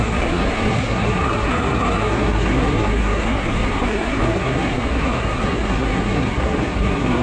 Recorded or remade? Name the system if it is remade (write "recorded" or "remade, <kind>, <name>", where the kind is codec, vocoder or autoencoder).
remade, codec, SNAC